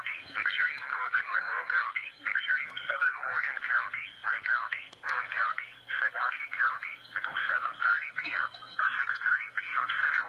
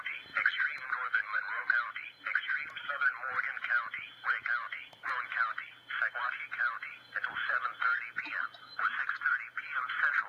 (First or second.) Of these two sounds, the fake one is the first